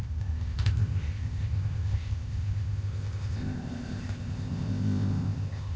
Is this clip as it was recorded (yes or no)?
no